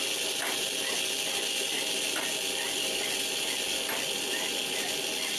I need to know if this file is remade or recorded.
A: recorded